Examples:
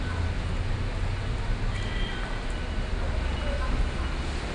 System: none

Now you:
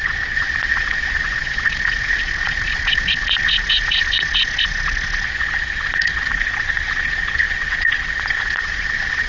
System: vocoder, Vocos